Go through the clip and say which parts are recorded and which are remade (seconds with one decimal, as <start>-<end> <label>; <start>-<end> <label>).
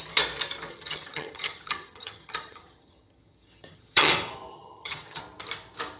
0.0-0.7 recorded; 0.7-4.1 remade; 4.1-4.5 recorded; 4.5-5.2 remade; 5.2-6.0 recorded